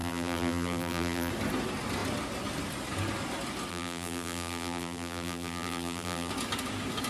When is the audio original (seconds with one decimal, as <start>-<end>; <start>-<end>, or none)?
1.3-3.7; 6.3-7.1